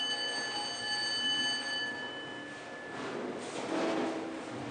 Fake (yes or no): no